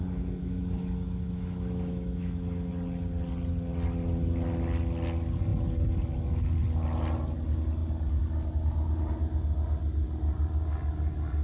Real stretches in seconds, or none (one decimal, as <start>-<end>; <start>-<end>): 0.0-0.4; 2.7-11.4